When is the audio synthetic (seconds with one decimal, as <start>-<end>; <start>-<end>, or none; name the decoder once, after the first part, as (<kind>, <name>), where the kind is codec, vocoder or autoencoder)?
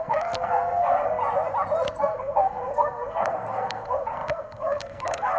0.0-1.2 (codec, SNAC); 1.9-5.4